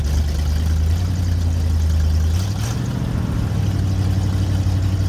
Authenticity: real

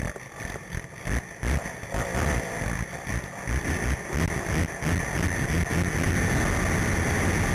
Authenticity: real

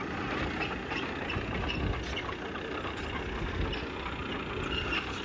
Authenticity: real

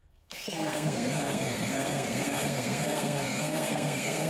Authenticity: fake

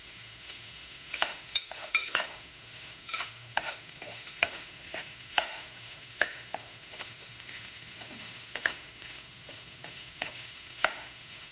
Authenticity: fake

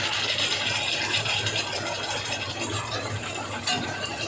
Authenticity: fake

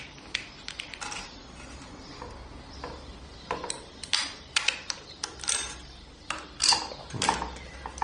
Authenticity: real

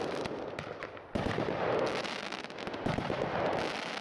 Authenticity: real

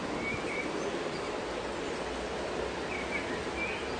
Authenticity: real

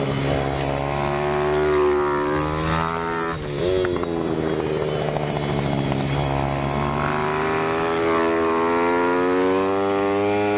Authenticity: real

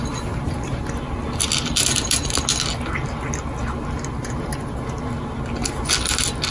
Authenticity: real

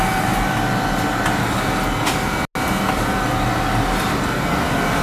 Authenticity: real